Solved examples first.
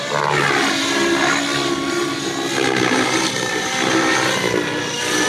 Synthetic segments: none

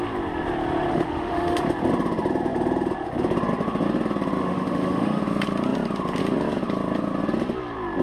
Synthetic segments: 0.9-1.6 (autoencoder, DAC-VAE); 4.4-5.2

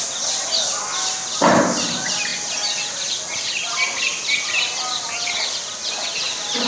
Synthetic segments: none